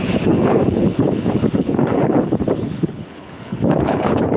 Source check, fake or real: fake